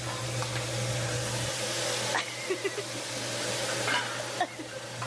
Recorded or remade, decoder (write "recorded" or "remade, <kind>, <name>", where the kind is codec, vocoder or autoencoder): recorded